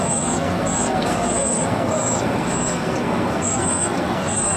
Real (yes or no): no